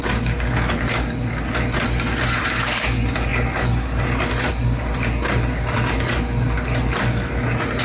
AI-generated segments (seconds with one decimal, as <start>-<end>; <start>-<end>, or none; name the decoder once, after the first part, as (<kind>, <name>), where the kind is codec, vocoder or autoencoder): none